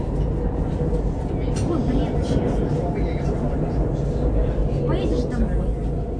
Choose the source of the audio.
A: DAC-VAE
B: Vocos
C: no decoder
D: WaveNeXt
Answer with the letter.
C